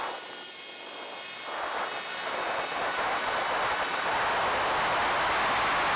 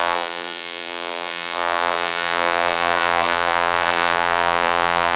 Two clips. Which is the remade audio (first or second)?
second